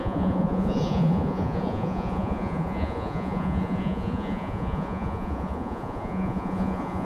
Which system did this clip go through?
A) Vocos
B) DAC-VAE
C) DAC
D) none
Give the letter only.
A